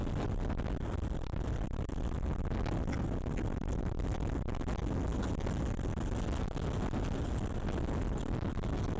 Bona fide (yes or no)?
yes